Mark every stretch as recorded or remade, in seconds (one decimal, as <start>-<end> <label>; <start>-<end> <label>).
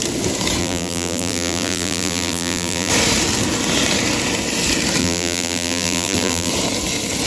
0.0-0.6 recorded; 0.6-2.9 remade; 2.9-5.0 recorded; 5.0-6.5 remade; 6.5-7.3 recorded